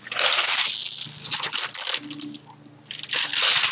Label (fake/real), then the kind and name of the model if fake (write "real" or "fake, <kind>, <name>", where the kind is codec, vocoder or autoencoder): real